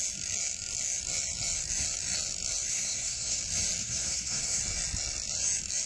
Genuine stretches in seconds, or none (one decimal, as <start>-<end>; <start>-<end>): 0.0-2.7; 3.4-3.8; 4.6-5.9